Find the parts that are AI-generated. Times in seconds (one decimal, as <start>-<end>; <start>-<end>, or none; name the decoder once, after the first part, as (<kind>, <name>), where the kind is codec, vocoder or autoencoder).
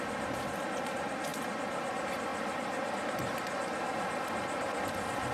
none